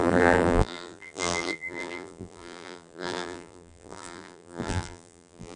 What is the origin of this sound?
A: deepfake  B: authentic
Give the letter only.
A